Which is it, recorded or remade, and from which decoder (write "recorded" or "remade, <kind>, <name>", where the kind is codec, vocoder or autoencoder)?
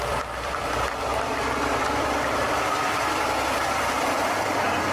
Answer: remade, vocoder, BigVGAN v2